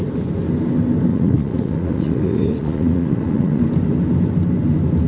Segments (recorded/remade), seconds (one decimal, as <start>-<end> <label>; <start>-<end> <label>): 0.0-1.1 recorded; 1.1-3.6 remade; 3.6-5.1 recorded

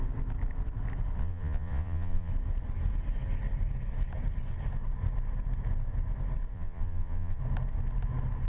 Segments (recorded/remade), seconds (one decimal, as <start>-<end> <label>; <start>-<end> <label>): 0.0-1.2 recorded; 1.2-2.3 remade; 2.3-6.5 recorded; 6.5-7.4 remade; 7.4-8.5 recorded